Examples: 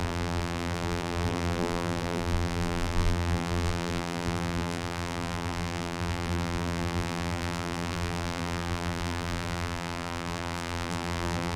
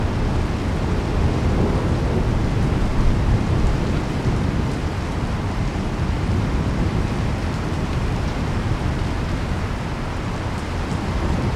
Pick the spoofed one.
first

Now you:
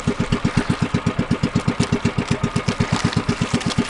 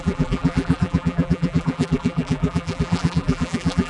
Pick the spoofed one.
second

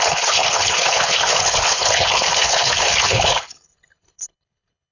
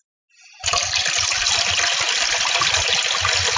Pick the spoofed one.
first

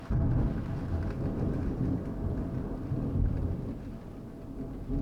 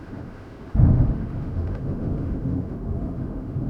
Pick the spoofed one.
second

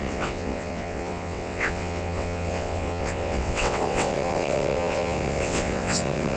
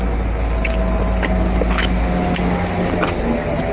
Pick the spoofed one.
first